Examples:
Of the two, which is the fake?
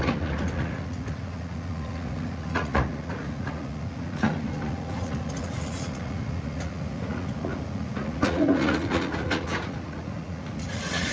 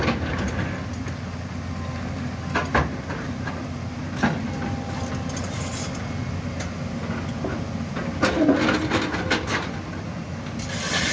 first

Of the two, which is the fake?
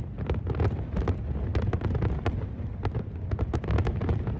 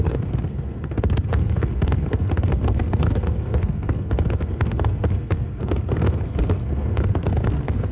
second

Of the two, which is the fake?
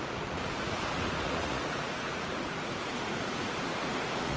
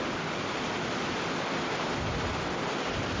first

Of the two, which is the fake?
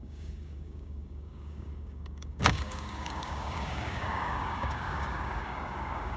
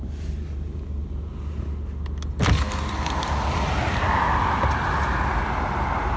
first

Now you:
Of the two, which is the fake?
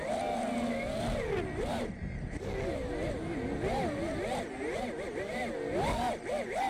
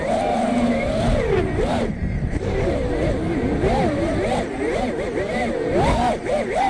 second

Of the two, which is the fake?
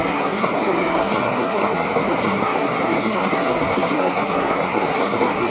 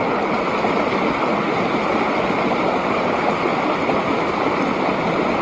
first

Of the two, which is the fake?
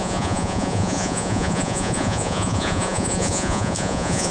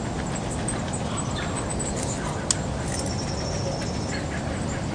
first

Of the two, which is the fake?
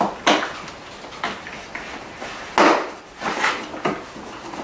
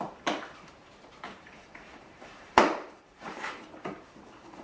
second